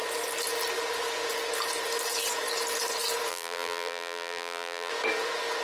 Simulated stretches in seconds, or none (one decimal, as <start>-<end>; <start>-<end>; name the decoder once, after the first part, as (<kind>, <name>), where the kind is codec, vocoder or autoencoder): 3.3-4.9 (vocoder, BigVGAN v2)